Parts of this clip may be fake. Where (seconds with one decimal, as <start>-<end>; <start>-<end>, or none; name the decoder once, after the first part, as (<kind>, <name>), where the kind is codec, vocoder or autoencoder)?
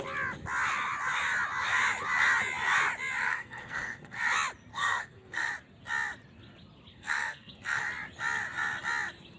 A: 3.2-4.2 (codec, SNAC); 4.7-5.5; 6.9-7.8